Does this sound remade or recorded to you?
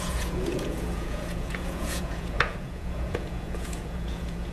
remade